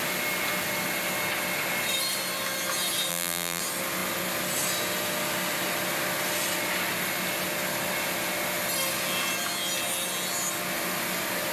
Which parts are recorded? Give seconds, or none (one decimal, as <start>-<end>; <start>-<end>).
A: 0.0-3.1; 3.6-11.5

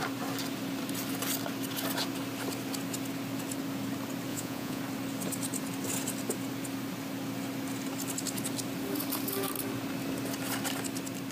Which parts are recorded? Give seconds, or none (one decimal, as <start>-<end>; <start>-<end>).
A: 0.0-4.3; 4.8-11.3